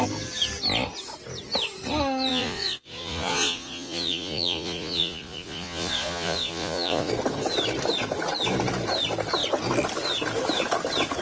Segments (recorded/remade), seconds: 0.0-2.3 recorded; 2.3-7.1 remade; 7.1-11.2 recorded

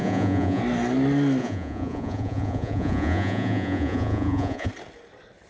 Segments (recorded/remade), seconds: 0.0-0.6 remade; 0.6-1.4 recorded; 1.4-4.7 remade; 4.7-5.5 recorded

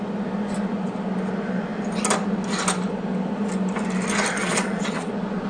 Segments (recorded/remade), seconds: 0.0-4.4 recorded; 4.4-5.1 remade; 5.1-5.5 recorded

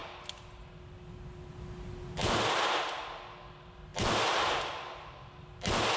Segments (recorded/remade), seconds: 0.0-6.0 recorded

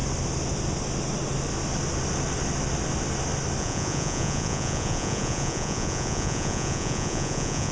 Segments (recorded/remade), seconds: 0.0-3.6 recorded; 3.6-7.7 remade

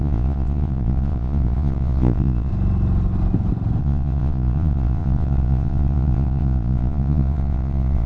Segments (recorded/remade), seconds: 0.0-2.5 remade; 2.5-3.8 recorded; 3.8-8.1 remade

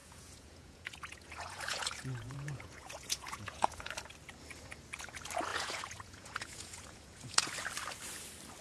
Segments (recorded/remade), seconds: 0.0-3.9 remade; 3.9-5.5 recorded; 5.5-7.5 remade; 7.5-8.6 recorded

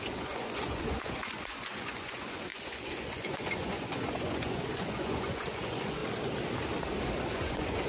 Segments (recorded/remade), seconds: 0.0-6.0 remade; 6.0-7.3 recorded; 7.3-7.9 remade